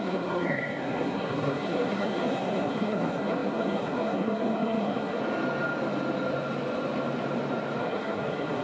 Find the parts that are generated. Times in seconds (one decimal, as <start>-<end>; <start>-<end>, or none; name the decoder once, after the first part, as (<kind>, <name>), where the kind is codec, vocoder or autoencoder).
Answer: 0.0-5.2 (codec, SNAC); 7.8-8.6